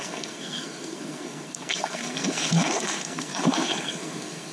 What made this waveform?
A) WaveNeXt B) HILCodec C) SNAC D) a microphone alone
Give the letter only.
C